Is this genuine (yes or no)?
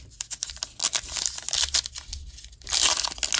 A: yes